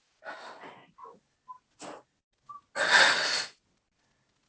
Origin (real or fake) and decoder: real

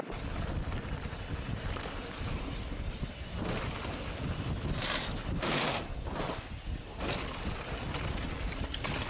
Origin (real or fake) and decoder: real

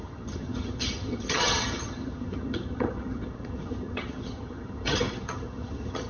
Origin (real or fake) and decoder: fake, vocoder, HiFi-GAN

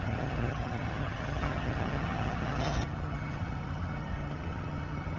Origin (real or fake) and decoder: fake, vocoder, HiFi-GAN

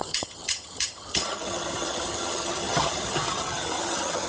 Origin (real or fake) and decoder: fake, vocoder, HiFi-GAN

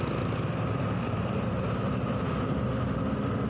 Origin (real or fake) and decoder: real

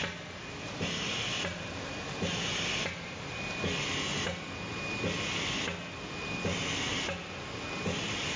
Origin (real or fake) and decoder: real